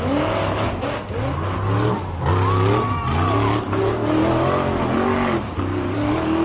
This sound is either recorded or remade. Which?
recorded